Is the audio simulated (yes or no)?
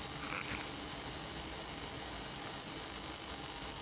no